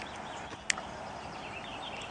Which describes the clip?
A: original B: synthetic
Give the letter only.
A